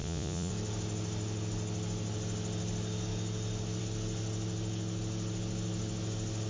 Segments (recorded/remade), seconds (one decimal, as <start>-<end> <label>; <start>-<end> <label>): 0.0-0.5 remade; 0.5-6.5 recorded

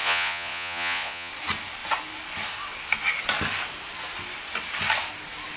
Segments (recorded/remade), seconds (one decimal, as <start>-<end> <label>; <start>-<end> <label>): 0.0-1.3 remade; 1.3-5.6 recorded

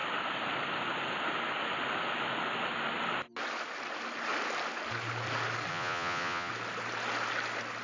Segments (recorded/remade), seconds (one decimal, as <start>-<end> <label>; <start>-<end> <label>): 0.0-5.7 recorded; 5.7-6.5 remade; 6.5-7.8 recorded

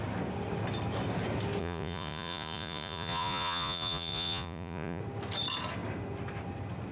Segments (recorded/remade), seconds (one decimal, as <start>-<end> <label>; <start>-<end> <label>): 0.0-1.6 recorded; 1.6-5.0 remade; 5.0-6.9 recorded

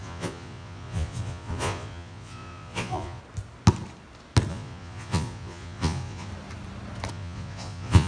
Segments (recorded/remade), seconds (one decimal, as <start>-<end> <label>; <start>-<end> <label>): 0.0-3.2 remade; 3.2-4.5 recorded; 4.5-6.3 remade; 6.3-7.1 recorded; 7.1-8.1 remade